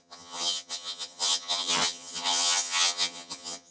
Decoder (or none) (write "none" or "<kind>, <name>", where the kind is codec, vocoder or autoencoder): vocoder, HiFi-GAN